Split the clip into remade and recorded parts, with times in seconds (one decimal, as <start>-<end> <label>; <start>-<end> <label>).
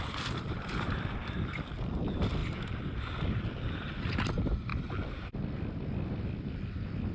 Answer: 0.0-2.4 remade; 2.4-3.7 recorded; 3.7-4.7 remade; 4.7-6.2 recorded; 6.2-7.1 remade